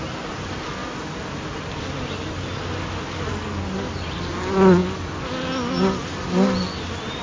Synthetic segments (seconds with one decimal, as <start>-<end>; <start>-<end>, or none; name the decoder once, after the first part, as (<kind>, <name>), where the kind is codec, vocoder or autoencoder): none